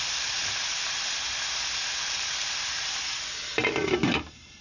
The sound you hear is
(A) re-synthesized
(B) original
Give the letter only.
B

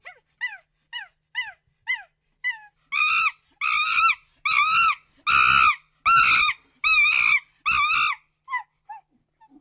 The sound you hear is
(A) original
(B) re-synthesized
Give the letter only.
A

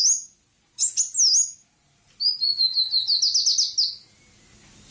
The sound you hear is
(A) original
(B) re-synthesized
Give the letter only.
A